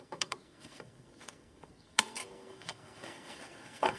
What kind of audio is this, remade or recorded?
remade